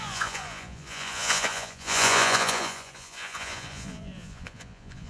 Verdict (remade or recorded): remade